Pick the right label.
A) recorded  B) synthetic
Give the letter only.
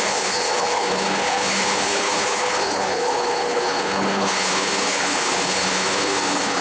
B